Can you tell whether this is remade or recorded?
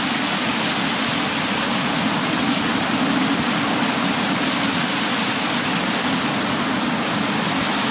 recorded